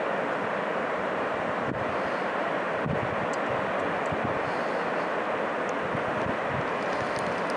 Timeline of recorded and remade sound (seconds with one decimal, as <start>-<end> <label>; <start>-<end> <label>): 0.0-0.7 recorded; 0.7-1.8 remade; 1.8-7.6 recorded